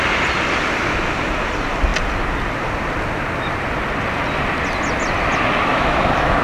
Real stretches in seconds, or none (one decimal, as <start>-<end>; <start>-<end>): 0.0-5.7